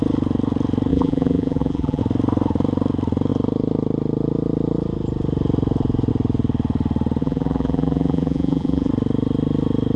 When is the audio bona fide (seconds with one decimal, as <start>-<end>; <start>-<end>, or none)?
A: 0.0-0.9; 2.0-7.2; 8.9-10.0

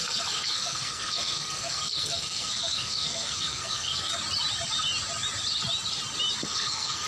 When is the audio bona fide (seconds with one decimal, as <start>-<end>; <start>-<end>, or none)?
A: 4.1-6.4

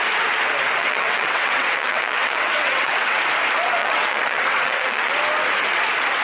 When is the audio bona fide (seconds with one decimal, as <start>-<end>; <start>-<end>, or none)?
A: 0.0-0.8; 3.2-3.8; 5.1-6.2

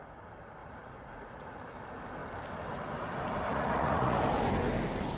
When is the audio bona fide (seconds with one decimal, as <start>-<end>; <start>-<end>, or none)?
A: 0.0-0.6; 1.5-3.5; 4.2-5.2

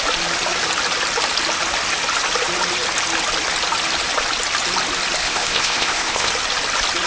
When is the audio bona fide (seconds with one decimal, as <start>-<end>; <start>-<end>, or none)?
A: 0.0-5.2; 6.3-7.1